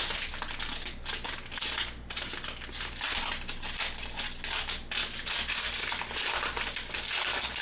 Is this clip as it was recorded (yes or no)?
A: yes